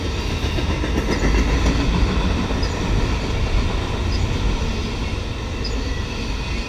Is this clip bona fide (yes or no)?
yes